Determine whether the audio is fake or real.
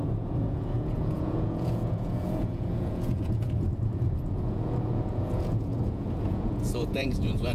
fake